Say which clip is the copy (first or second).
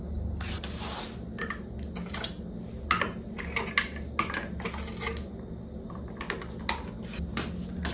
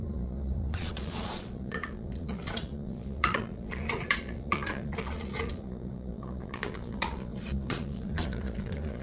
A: second